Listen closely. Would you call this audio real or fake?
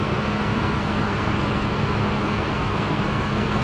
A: fake